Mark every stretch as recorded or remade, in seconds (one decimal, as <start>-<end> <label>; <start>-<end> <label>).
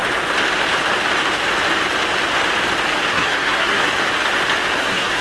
0.0-3.1 recorded; 3.1-3.9 remade; 3.9-4.8 recorded; 4.8-5.2 remade